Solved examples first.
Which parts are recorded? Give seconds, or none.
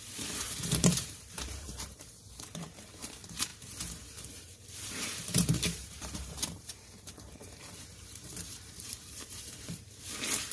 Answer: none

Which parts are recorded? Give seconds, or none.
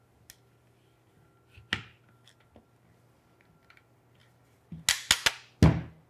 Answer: 0.0-6.1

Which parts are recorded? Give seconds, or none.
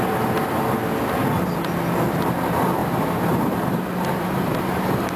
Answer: 0.8-2.2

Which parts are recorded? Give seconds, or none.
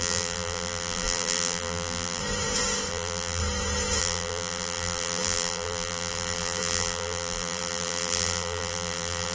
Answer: 2.2-2.9; 3.4-4.0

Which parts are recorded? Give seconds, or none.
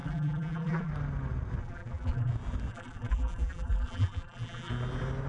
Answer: 0.9-1.6; 2.3-2.7; 4.7-5.3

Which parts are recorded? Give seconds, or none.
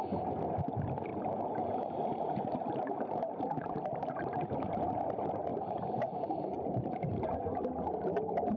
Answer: 0.0-1.1; 4.8-5.5; 7.6-8.6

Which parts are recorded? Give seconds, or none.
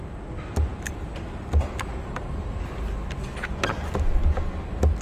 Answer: 0.0-5.0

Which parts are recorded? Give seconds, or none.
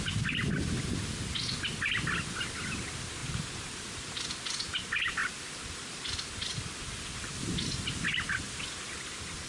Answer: 0.0-3.2; 4.4-5.2; 7.4-9.5